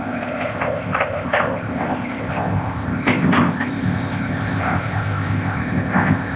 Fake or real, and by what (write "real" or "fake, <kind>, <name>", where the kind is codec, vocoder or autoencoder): fake, codec, ZipCodec